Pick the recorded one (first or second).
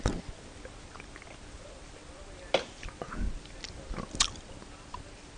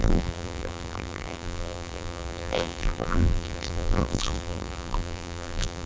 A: first